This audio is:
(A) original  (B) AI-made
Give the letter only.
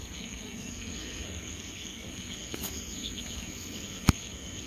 B